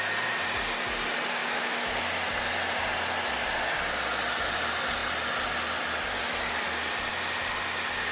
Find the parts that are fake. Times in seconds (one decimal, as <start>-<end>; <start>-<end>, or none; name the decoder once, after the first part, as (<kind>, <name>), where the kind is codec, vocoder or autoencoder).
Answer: 1.4-1.9 (autoencoder, DAC-VAE)